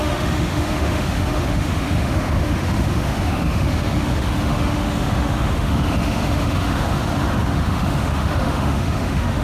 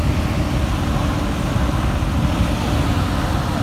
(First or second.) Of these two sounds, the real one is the second